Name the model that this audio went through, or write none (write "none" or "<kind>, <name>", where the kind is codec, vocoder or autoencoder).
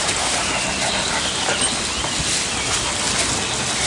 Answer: none